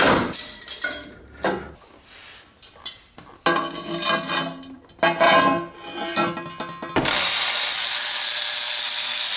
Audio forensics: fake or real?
real